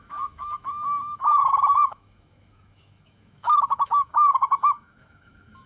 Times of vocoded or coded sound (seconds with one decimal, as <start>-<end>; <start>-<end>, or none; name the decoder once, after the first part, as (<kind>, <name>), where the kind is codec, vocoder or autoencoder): 0.0-5.7 (autoencoder, DAC-VAE)